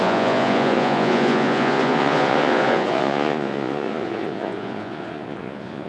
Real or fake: fake